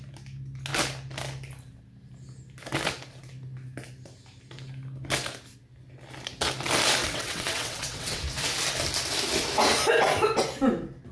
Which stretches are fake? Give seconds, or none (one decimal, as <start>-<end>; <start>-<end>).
7.0-8.2